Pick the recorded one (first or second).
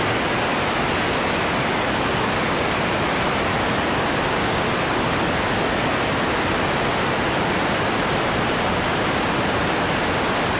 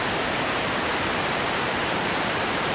first